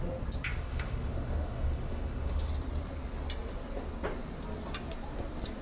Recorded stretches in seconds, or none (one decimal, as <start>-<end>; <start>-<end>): 0.0-0.5; 2.5-5.6